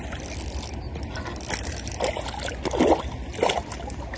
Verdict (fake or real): real